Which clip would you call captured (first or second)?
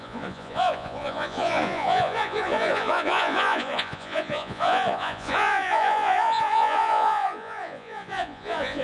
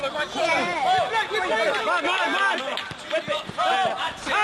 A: second